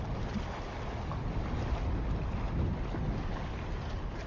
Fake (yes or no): no